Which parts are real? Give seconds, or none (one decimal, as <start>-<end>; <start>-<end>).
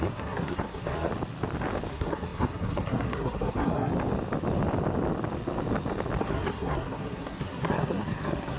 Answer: 1.1-1.9; 3.9-6.2